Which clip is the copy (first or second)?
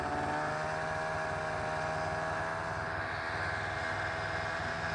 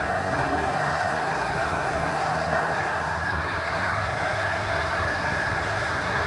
second